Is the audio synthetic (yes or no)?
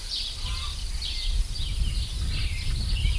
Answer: no